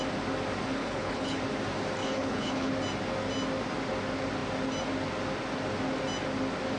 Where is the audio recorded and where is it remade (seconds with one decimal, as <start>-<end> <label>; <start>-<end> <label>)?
0.0-0.8 recorded; 0.8-1.4 remade; 1.4-2.0 recorded; 2.0-2.7 remade; 2.7-6.8 recorded